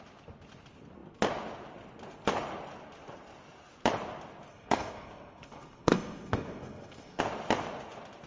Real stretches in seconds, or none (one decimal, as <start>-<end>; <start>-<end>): 0.0-4.5; 7.2-8.3